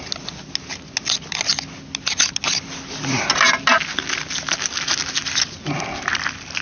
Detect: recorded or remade recorded